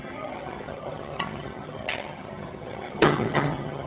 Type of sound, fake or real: fake